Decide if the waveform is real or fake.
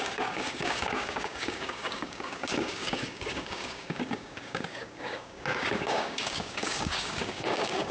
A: fake